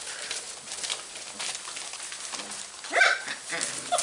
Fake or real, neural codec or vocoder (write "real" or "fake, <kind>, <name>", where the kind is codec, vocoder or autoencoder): real